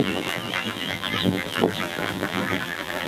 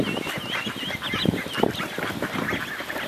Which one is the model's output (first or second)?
first